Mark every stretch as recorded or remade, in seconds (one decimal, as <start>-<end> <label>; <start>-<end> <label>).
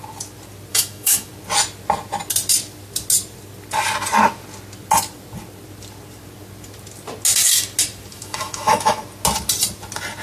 0.0-0.7 recorded; 0.7-1.3 remade; 1.3-8.1 recorded; 8.1-9.0 remade; 9.0-10.2 recorded